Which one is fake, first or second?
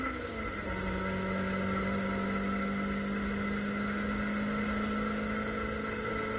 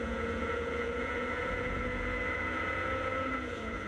second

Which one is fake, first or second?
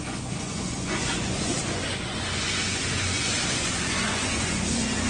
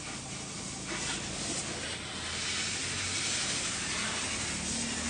first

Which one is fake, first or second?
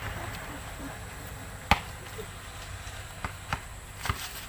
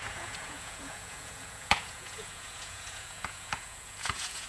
second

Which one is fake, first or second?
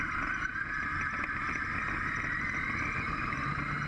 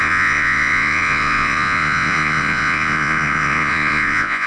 second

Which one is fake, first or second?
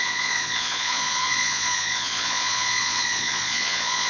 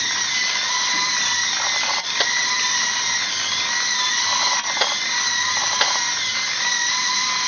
first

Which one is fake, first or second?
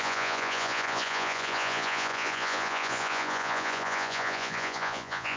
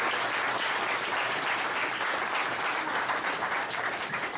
first